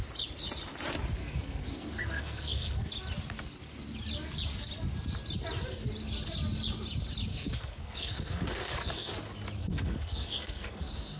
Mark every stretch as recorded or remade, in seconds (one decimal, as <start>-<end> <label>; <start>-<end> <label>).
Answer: 0.0-1.2 recorded; 1.2-2.9 remade; 2.9-7.3 recorded; 7.3-9.1 remade; 9.1-9.6 recorded; 9.6-11.2 remade